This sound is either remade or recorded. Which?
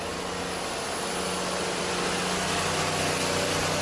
recorded